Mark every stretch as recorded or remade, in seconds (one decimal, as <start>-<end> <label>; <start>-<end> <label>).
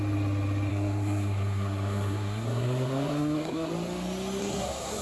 0.0-0.7 recorded; 0.7-3.7 remade; 3.7-4.4 recorded; 4.4-5.0 remade